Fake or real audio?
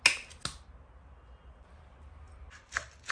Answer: real